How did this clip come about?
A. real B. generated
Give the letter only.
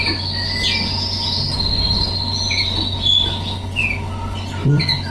A